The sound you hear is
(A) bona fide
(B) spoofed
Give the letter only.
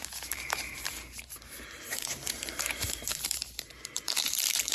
B